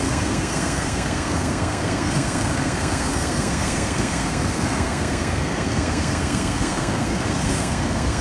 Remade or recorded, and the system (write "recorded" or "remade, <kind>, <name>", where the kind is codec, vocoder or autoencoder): remade, codec, SNAC